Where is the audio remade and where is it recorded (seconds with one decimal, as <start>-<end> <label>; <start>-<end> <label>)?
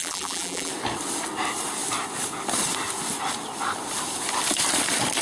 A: 0.0-0.7 remade; 0.7-5.2 recorded